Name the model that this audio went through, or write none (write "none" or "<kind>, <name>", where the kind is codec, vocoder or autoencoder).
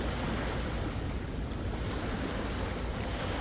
none